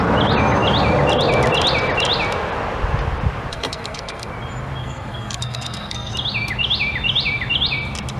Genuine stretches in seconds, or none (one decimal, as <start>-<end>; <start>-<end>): 0.0-3.5; 4.3-4.8; 6.1-8.2